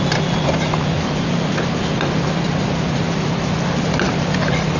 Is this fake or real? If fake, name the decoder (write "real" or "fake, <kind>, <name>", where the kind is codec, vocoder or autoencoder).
real